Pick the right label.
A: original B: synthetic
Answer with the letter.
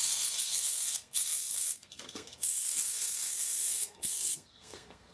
B